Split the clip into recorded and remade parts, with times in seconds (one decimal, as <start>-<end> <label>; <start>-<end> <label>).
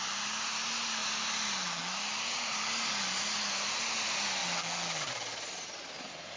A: 0.0-6.4 recorded